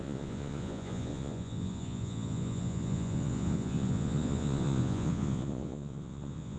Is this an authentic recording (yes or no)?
no